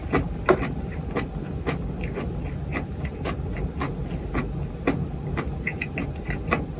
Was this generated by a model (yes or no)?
no